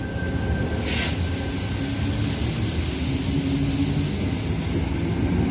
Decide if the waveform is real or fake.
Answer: real